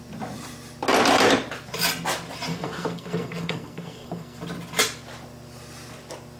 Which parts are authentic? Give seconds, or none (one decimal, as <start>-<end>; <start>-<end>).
0.0-2.5; 4.4-6.4